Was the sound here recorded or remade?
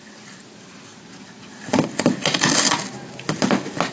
recorded